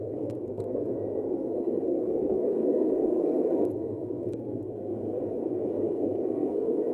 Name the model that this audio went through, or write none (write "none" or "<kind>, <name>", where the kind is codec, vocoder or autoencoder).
codec, SNAC